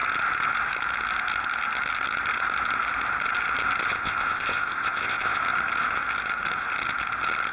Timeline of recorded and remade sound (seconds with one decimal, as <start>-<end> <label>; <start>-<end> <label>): 0.0-3.9 recorded; 3.9-5.4 remade; 5.4-7.5 recorded

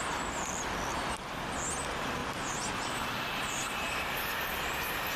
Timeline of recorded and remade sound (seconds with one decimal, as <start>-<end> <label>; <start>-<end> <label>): 0.0-2.2 recorded; 2.2-4.1 remade; 4.1-5.2 recorded

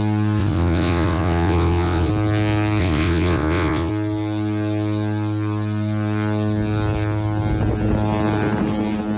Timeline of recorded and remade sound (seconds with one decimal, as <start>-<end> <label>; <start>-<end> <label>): 0.0-0.4 recorded; 0.4-2.1 remade; 2.1-2.8 recorded; 2.8-3.9 remade; 3.9-9.2 recorded